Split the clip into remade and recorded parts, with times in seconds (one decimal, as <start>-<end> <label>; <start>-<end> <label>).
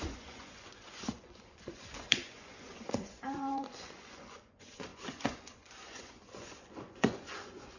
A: 0.0-7.8 remade